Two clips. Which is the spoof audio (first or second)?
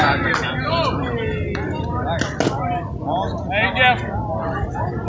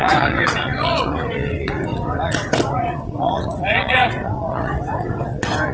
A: second